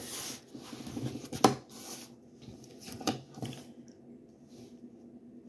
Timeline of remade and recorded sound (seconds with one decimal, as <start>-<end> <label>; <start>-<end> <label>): 0.0-2.5 recorded; 2.5-3.6 remade; 3.6-5.5 recorded